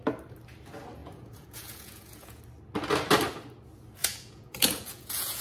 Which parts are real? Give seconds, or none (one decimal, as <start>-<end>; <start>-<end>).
0.0-1.0; 2.4-4.0